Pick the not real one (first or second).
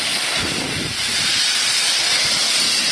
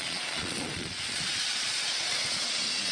second